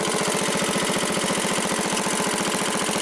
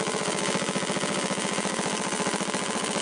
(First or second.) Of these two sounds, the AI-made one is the second